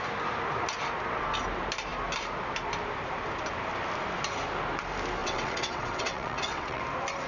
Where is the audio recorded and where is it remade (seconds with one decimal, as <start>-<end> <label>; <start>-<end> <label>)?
0.0-5.2 recorded; 5.2-6.8 remade; 6.8-7.3 recorded